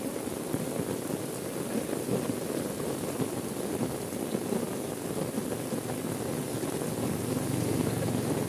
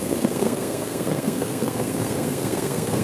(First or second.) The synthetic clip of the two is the second